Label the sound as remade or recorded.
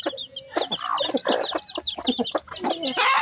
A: recorded